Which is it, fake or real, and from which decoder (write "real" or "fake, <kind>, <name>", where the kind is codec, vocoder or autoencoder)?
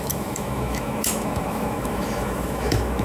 fake, autoencoder, DAC-VAE